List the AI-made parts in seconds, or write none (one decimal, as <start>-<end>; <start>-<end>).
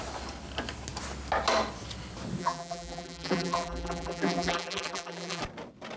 2.4-5.4